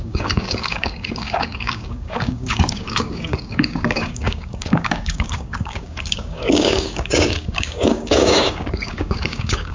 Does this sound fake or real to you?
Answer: fake